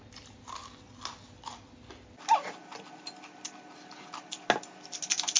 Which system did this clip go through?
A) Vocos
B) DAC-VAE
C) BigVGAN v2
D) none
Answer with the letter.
D